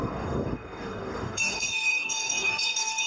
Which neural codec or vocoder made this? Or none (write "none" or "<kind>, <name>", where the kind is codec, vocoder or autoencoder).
codec, DAC